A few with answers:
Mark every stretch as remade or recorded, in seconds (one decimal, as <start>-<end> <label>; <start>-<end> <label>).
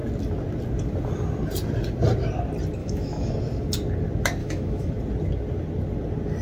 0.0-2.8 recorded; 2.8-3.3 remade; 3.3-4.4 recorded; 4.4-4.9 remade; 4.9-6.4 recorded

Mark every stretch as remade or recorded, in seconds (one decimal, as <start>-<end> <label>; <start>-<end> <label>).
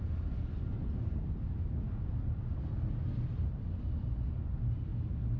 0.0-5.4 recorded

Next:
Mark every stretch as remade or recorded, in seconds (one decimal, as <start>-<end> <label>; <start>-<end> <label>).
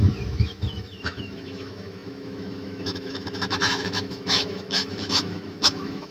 0.0-6.1 remade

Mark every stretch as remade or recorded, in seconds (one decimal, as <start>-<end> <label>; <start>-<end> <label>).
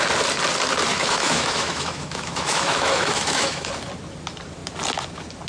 0.0-0.9 recorded; 0.9-3.7 remade; 3.7-5.5 recorded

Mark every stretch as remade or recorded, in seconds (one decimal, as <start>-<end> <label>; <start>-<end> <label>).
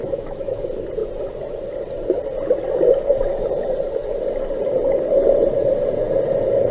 0.0-0.6 remade; 0.6-6.7 recorded